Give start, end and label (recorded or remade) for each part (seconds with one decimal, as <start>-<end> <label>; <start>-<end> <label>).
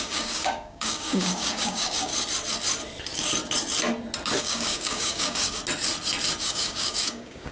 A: 0.0-2.1 remade; 2.1-4.4 recorded; 4.4-5.6 remade; 5.6-6.4 recorded; 6.4-7.5 remade